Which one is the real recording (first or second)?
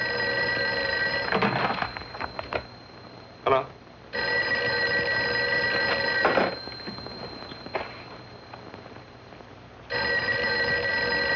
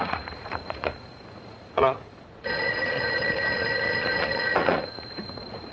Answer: first